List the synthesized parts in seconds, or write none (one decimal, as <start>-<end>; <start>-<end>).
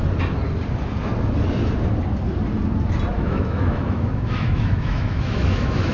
3.1-5.9